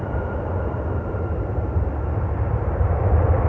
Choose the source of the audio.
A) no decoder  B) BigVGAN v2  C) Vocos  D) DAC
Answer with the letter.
B